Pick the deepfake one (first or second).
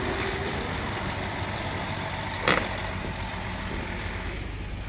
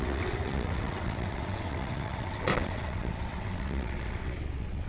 second